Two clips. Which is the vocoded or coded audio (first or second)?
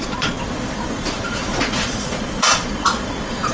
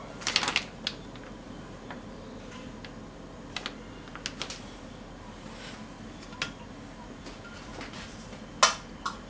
first